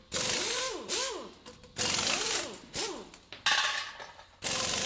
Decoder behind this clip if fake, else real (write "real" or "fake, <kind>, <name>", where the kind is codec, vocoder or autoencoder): real